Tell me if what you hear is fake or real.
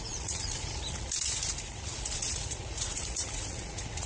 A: fake